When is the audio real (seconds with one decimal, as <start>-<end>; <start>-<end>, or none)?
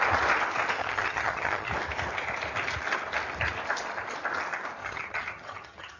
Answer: 0.0-0.8; 1.7-4.8